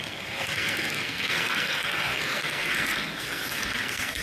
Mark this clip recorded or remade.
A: remade